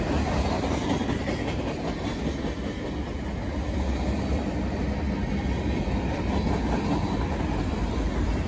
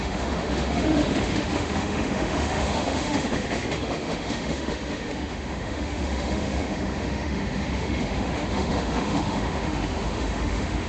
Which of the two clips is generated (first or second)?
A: second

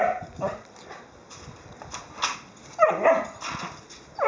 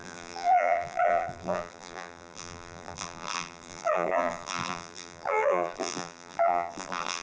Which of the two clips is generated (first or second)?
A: second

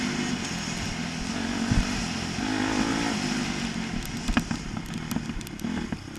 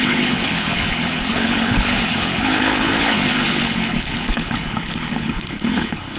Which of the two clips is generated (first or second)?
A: second